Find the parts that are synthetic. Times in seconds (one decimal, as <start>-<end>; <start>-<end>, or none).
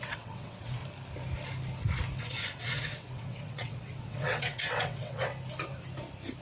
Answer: 0.0-0.8; 2.2-5.3